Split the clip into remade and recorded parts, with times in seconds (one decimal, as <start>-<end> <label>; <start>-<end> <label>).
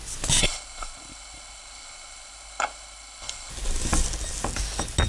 0.0-0.4 recorded; 0.4-3.5 remade; 3.5-5.1 recorded